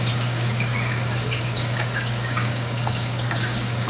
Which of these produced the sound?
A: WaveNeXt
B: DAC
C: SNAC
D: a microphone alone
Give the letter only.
B